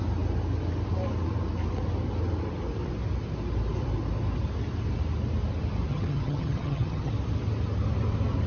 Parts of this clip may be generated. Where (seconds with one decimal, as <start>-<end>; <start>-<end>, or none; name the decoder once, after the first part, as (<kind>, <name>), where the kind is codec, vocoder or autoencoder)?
5.9-7.1 (vocoder, HiFi-GAN)